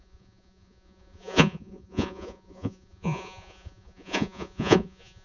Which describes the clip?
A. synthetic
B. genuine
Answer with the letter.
A